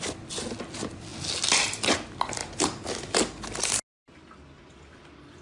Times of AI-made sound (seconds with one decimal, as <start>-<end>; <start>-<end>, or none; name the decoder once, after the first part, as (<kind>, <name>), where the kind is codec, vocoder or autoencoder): none